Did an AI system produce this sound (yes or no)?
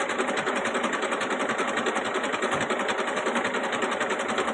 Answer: no